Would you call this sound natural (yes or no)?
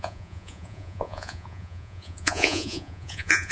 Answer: no